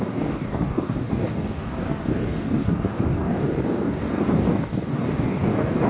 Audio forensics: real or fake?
fake